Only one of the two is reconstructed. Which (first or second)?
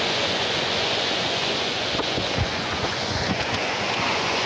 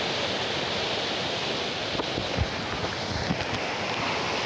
first